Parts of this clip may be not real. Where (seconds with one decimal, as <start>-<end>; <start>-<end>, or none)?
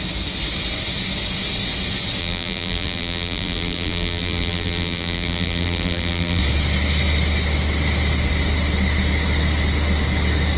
2.2-6.4